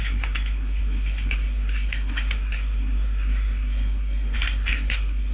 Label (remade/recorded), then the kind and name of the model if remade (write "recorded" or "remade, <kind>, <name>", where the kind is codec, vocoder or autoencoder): remade, codec, SNAC